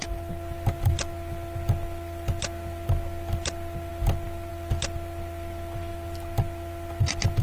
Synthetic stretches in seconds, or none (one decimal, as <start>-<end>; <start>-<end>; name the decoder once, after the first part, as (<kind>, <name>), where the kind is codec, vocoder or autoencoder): none